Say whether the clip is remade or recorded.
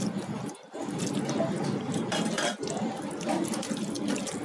recorded